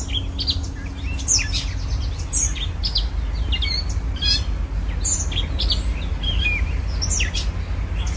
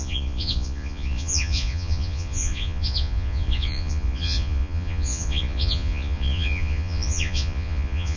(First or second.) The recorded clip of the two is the first